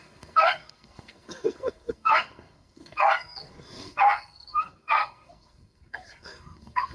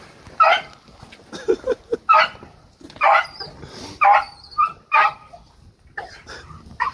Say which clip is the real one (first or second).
second